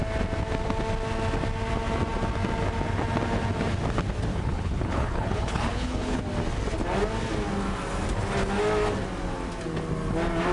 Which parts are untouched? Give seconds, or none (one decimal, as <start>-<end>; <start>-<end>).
0.0-4.3; 6.2-10.5